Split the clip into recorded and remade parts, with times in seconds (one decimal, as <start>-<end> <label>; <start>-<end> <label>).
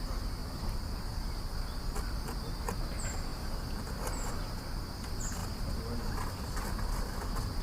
0.0-0.4 recorded; 0.4-1.8 remade; 1.8-5.4 recorded; 5.4-6.7 remade; 6.7-7.6 recorded